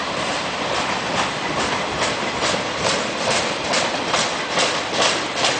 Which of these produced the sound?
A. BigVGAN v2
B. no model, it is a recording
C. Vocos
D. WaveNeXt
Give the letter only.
A